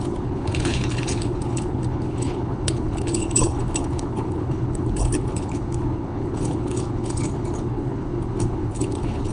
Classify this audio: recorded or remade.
remade